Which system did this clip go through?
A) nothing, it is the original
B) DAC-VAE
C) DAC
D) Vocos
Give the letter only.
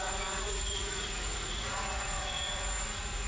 D